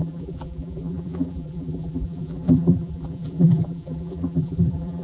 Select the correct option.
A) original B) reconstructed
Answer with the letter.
B